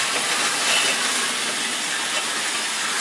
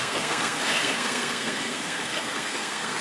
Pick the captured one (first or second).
first